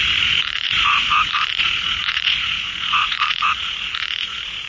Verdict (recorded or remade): remade